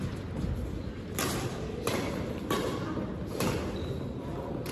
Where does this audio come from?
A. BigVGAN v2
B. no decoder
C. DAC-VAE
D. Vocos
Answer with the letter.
B